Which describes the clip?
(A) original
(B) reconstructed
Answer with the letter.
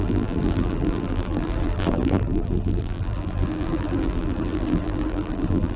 B